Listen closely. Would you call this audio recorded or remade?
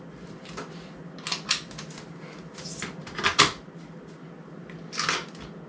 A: recorded